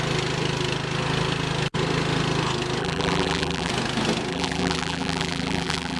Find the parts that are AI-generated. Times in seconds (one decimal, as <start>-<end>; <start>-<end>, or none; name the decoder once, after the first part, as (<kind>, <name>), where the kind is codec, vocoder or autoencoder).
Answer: 2.8-3.7 (vocoder, BigVGAN v2); 4.3-6.0